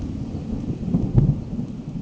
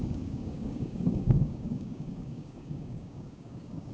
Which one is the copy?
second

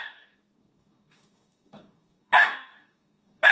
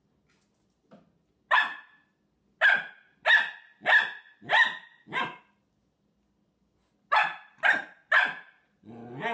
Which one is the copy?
first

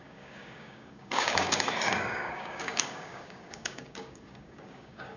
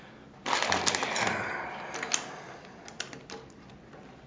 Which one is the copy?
first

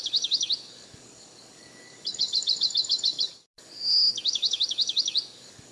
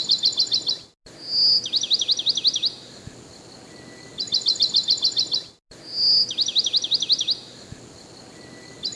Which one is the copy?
first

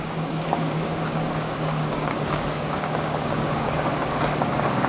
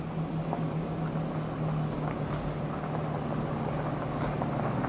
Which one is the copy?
first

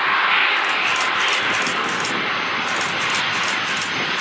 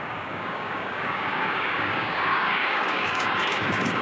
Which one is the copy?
second